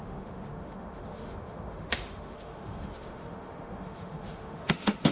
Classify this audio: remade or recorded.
remade